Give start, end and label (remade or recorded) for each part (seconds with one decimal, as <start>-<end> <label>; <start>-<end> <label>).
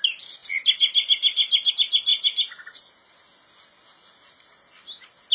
0.0-5.3 recorded